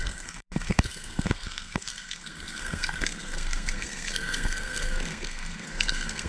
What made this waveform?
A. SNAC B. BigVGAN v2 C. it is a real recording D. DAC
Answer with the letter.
A